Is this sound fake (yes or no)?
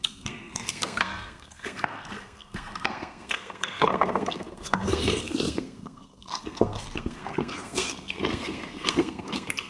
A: yes